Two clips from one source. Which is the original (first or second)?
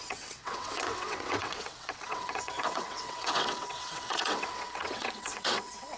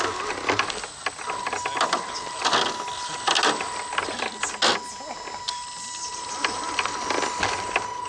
second